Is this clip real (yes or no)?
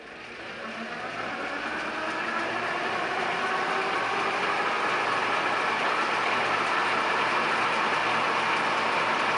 yes